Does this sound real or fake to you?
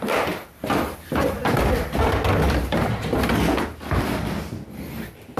real